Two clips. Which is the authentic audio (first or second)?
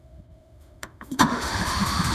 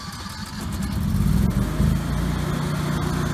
second